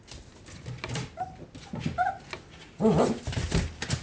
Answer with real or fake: real